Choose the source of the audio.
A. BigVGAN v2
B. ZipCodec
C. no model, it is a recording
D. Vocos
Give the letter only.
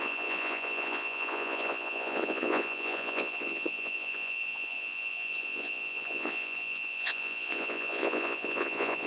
D